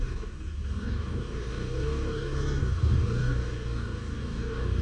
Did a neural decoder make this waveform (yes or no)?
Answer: yes